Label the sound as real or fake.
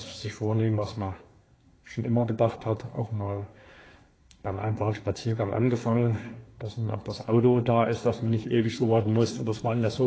fake